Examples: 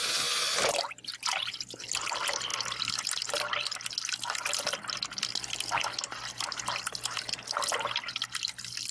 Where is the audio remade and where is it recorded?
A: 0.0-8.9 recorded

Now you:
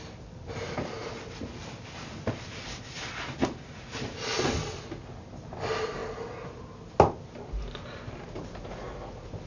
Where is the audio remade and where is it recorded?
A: 0.0-9.5 recorded